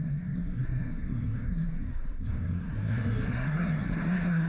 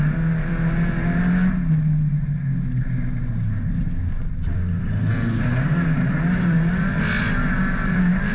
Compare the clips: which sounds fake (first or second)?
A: first